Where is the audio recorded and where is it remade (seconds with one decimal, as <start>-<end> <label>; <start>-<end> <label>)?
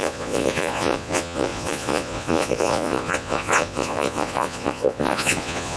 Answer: 0.0-5.8 remade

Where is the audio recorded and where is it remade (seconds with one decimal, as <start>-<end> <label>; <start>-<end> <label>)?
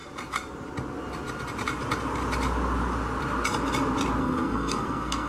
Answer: 0.0-4.2 recorded; 4.2-5.3 remade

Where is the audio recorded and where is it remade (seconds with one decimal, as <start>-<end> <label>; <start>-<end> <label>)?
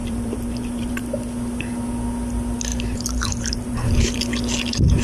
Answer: 0.0-1.0 remade; 1.0-2.7 recorded; 2.7-4.2 remade; 4.2-5.0 recorded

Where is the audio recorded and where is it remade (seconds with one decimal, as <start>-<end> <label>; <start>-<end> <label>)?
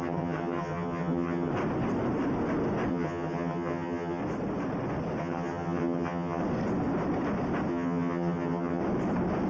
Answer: 0.0-1.5 remade; 1.5-2.9 recorded; 2.9-4.2 remade; 4.2-5.2 recorded; 5.2-6.4 remade; 6.4-7.7 recorded; 7.7-8.8 remade; 8.8-9.5 recorded